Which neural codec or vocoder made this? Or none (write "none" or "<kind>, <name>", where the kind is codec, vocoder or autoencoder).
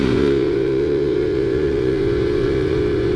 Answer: vocoder, Vocos